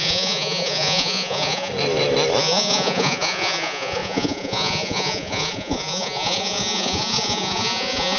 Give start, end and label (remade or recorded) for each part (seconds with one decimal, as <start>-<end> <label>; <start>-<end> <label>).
0.0-1.7 remade; 1.7-2.4 recorded; 2.4-8.2 remade